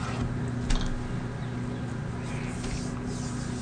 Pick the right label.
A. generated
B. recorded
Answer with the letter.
B